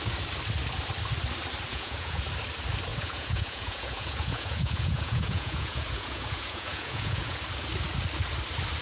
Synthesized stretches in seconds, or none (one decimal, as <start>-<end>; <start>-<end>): 1.7-2.2; 2.9-7.4